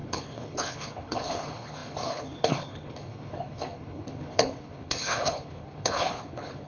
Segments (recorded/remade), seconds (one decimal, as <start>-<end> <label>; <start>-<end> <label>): 0.0-6.7 remade